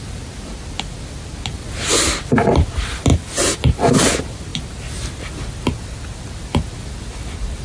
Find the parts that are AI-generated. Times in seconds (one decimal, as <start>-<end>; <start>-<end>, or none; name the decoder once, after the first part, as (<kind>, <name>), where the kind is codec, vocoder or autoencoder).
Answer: none